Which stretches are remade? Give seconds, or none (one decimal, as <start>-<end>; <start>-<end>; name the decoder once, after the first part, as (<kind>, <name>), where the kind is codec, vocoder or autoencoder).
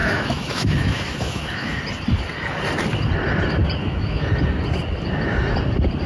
0.0-1.8 (autoencoder, DAC-VAE); 3.8-4.3